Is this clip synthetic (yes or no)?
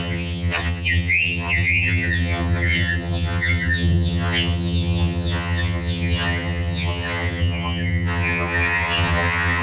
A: yes